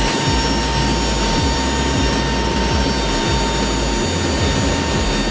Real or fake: real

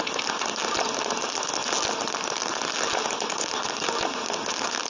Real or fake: real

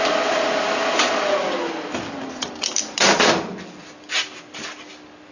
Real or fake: real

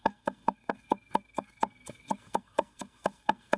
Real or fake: fake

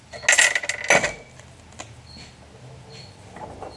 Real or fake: real